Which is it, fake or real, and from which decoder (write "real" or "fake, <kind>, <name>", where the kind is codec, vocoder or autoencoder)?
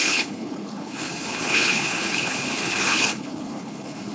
fake, codec, HILCodec